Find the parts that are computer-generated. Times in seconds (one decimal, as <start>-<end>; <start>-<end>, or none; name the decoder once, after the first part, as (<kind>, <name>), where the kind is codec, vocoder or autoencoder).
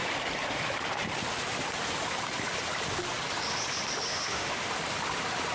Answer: 4.1-4.7 (autoencoder, DAC-VAE)